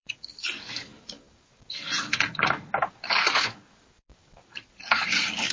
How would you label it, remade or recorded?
remade